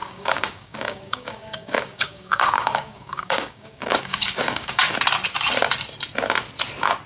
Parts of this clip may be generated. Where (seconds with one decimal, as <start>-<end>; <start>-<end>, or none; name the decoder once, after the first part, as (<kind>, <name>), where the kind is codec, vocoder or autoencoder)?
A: 0.0-4.8 (codec, DAC)

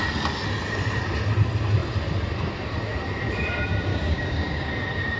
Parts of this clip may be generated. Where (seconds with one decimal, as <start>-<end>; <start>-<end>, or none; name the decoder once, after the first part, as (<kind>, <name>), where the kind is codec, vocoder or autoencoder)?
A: 3.9-4.7 (codec, DAC)

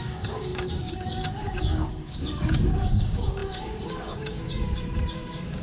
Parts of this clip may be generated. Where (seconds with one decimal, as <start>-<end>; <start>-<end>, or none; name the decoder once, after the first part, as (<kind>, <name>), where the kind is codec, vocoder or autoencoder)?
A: 0.0-5.6 (codec, DAC)

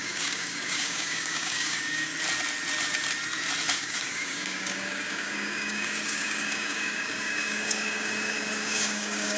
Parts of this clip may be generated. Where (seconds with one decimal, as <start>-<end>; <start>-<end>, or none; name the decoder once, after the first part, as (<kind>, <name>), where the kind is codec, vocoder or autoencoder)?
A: 0.0-2.1 (codec, DAC); 3.7-9.4

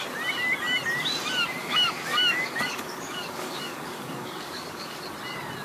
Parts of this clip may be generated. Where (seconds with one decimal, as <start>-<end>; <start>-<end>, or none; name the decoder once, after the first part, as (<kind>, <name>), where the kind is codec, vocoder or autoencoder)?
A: 1.6-5.0 (codec, DAC)